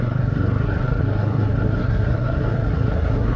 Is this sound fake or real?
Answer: fake